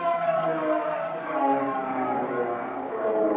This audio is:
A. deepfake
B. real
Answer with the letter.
A